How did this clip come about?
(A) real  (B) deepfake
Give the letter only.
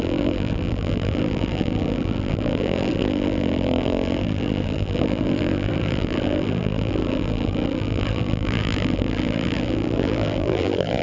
B